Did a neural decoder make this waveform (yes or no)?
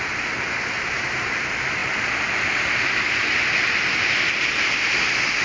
no